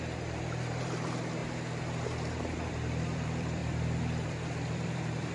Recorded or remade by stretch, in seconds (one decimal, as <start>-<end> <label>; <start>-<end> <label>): 0.0-1.4 remade; 1.4-2.7 recorded; 2.7-5.3 remade